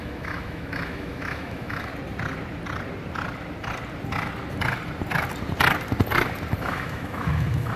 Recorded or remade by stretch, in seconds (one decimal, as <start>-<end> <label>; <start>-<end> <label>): 0.0-1.9 remade; 1.9-6.6 recorded; 6.6-7.8 remade